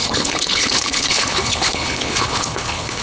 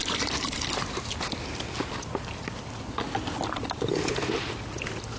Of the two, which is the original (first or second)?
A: second